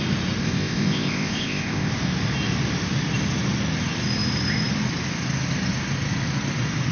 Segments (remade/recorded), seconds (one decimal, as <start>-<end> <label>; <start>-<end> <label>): 0.0-0.4 recorded; 0.4-1.9 remade; 1.9-6.9 recorded